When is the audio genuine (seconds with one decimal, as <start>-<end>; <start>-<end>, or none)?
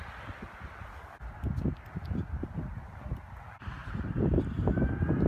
0.0-3.8; 4.4-5.3